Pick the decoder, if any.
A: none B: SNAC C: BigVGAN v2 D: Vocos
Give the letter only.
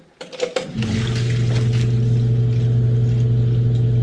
A